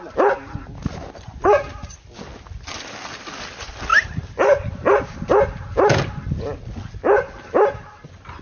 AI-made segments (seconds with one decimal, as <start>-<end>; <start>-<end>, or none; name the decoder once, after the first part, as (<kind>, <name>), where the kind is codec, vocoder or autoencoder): none